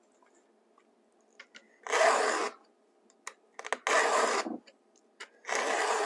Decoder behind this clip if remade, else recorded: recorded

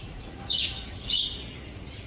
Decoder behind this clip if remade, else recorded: remade, vocoder, Vocos